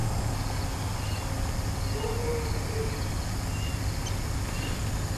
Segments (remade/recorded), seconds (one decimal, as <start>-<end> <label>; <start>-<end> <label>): 0.0-5.2 recorded